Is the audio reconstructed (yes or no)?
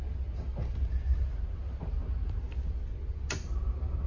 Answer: no